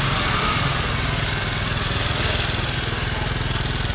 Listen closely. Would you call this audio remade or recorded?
recorded